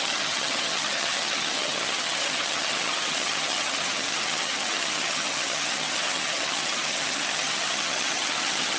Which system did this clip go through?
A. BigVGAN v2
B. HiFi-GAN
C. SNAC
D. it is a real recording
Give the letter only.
B